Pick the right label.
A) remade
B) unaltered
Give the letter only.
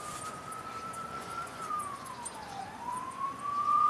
A